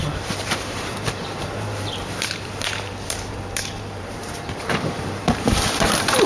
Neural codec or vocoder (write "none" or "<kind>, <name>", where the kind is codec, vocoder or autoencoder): vocoder, BigVGAN v2